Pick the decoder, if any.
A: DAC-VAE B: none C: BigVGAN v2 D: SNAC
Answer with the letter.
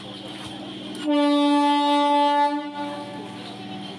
B